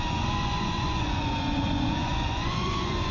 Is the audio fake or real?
fake